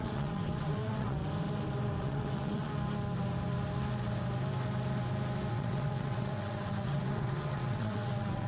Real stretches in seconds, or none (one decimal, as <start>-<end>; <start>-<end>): 1.2-2.0; 2.7-5.5